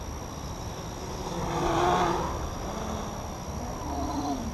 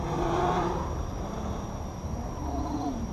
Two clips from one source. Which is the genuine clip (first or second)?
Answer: first